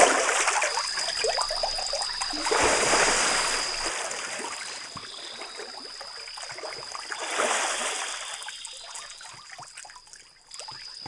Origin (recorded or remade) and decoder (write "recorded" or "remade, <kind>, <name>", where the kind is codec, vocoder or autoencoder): recorded